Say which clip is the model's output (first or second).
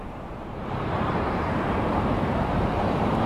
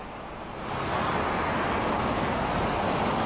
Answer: first